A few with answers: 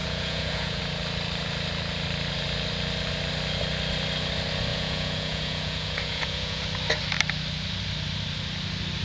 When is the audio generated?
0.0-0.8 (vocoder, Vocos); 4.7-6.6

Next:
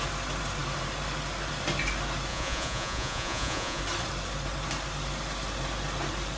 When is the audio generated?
2.3-3.8 (vocoder, Vocos)

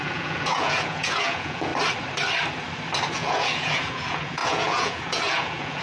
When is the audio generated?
0.0-1.7 (vocoder, Vocos); 3.1-5.8

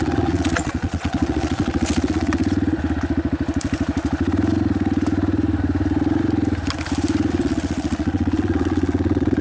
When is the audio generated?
0.0-2.4 (vocoder, Vocos); 7.3-9.4

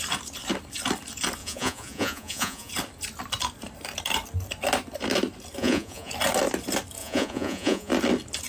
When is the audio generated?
1.4-2.7 (vocoder, Vocos); 5.6-6.1; 7.0-7.9

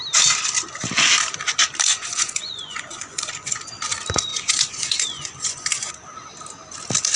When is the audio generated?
1.9-3.7 (vocoder, Vocos); 4.3-5.9

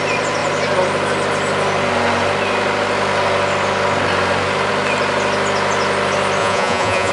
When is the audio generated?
6.4-7.1 (vocoder, Vocos)